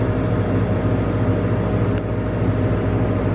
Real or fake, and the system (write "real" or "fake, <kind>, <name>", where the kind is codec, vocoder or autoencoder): real